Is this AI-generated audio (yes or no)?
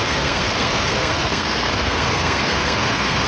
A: yes